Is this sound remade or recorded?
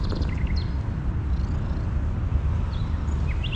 recorded